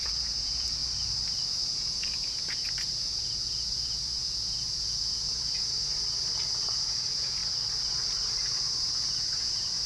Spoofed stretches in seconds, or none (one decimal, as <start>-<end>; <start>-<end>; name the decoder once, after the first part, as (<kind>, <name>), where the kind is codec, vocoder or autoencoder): 0.0-0.8 (vocoder, Vocos); 1.5-5.9; 6.7-7.4; 8.4-9.9